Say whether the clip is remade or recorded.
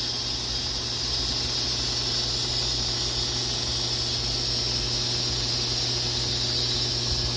recorded